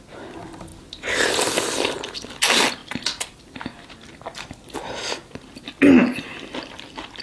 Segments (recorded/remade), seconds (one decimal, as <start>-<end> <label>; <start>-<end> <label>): 0.0-7.2 recorded